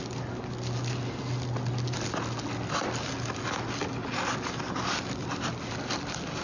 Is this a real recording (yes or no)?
yes